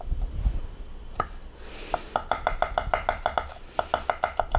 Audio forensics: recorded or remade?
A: recorded